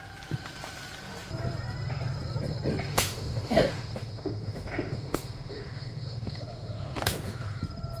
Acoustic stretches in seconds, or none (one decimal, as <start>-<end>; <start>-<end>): 0.0-2.9; 7.6-8.0